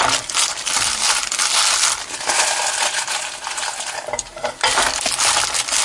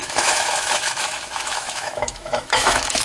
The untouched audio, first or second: first